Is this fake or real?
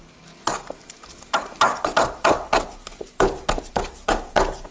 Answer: real